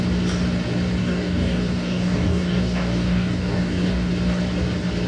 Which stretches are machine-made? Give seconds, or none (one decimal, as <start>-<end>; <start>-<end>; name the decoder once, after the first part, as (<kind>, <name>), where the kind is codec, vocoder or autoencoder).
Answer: 1.0-4.1 (codec, DAC)